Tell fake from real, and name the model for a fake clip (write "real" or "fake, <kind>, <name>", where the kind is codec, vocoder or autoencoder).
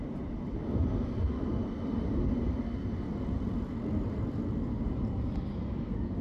real